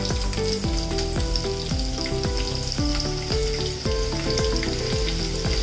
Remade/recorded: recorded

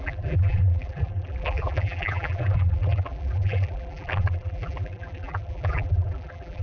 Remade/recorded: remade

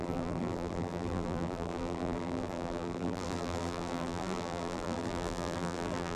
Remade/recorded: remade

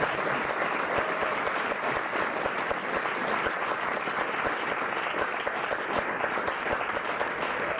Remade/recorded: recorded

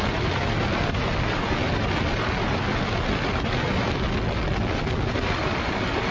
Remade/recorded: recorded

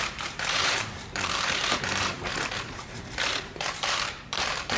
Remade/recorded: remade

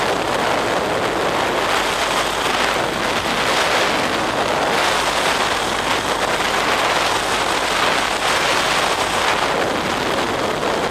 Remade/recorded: recorded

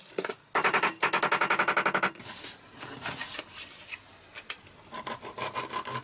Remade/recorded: recorded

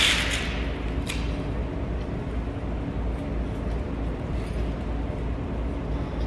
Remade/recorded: recorded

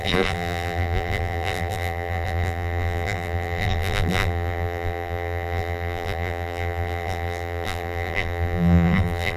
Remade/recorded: remade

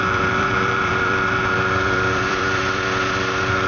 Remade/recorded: remade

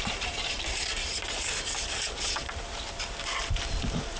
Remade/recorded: remade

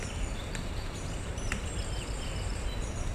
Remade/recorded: remade